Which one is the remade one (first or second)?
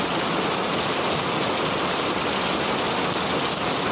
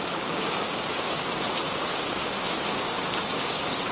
second